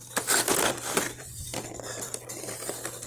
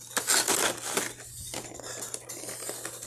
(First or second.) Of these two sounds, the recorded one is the second